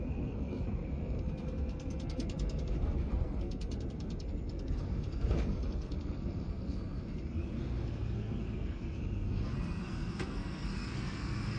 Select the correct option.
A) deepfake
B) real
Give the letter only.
A